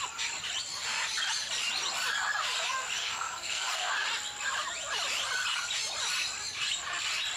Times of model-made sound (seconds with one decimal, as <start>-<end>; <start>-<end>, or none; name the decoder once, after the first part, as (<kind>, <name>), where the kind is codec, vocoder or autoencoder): 3.0-3.9 (codec, SNAC)